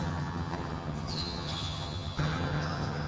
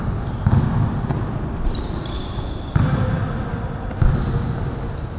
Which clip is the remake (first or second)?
first